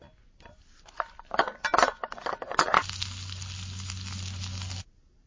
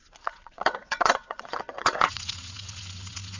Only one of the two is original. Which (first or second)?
first